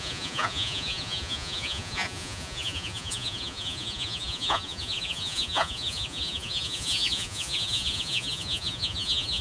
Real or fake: fake